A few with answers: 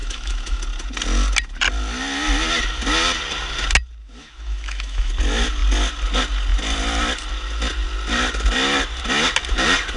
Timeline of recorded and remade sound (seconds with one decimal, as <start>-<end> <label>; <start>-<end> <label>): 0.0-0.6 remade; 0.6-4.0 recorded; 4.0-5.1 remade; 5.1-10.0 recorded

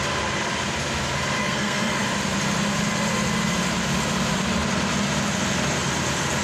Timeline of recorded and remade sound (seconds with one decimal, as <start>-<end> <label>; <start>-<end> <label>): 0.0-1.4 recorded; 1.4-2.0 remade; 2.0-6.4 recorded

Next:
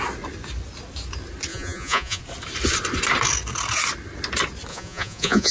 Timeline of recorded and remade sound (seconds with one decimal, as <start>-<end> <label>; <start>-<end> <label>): 0.0-1.5 recorded; 1.5-2.2 remade; 2.2-4.7 recorded; 4.7-5.5 remade